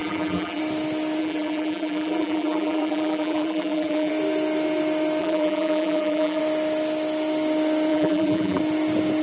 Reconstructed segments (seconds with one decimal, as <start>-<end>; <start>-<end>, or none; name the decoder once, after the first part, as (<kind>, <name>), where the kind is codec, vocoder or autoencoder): 0.0-0.6 (vocoder, BigVGAN v2); 1.2-4.1; 5.2-6.4; 7.9-8.6